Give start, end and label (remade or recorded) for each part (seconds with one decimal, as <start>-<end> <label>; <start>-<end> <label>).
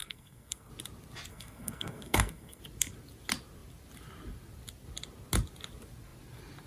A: 0.0-0.7 remade; 0.7-1.3 recorded; 1.3-2.6 remade; 2.6-6.7 recorded